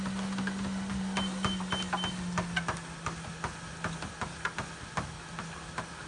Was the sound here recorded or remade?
recorded